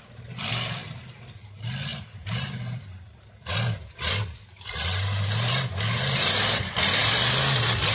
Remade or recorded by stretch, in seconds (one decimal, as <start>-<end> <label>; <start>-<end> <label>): 0.0-1.9 recorded; 1.9-6.3 remade; 6.3-7.9 recorded